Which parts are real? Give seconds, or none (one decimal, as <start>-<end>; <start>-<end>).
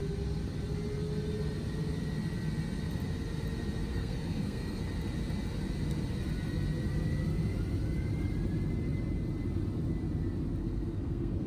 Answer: 0.0-3.9; 4.8-10.6